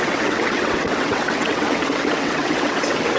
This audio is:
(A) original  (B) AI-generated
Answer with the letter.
B